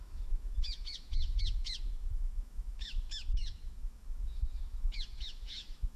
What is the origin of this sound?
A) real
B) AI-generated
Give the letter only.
B